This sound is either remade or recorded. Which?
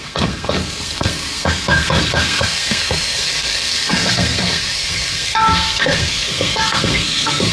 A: remade